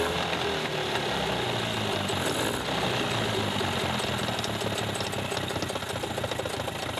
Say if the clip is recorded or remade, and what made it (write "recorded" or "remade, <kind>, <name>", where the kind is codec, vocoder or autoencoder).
recorded